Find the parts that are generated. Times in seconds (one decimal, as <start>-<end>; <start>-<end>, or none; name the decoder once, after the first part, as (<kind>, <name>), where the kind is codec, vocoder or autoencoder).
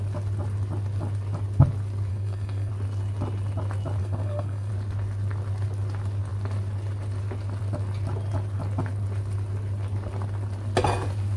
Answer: 2.1-2.7 (codec, SNAC); 4.0-4.7